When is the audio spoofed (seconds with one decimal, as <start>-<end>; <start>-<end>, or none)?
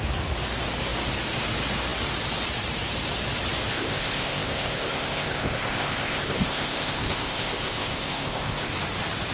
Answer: 3.7-8.7